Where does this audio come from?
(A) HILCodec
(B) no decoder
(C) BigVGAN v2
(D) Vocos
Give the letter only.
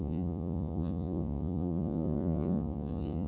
D